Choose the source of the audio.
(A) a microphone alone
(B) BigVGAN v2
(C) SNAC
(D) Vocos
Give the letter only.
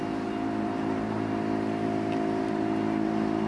A